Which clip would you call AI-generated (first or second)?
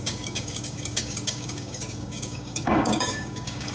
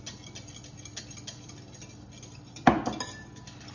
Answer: first